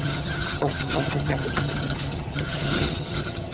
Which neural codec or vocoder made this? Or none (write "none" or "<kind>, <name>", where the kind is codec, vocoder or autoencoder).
vocoder, HiFi-GAN